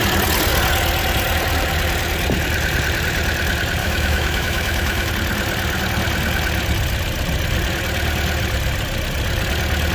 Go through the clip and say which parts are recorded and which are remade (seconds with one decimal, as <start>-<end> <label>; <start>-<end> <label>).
0.0-3.8 recorded; 3.8-5.1 remade; 5.1-9.9 recorded